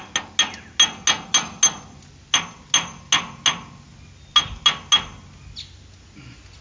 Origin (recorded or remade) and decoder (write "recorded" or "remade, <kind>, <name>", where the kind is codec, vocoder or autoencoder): recorded